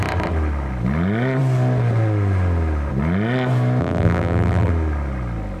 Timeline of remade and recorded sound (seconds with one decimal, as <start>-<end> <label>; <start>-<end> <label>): 0.0-3.8 recorded; 3.8-4.7 remade; 4.7-5.6 recorded